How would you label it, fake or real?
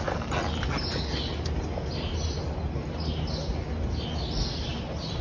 real